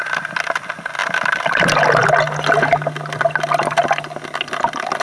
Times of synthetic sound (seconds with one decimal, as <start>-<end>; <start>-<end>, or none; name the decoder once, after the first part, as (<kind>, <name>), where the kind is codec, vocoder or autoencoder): none